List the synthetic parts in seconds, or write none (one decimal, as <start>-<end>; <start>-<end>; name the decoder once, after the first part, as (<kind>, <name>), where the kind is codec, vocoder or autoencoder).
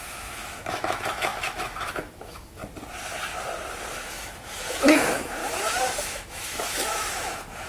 0.0-2.6 (autoencoder, DAC-VAE); 4.0-5.4; 6.0-7.7